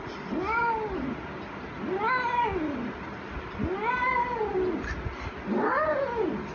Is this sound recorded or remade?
recorded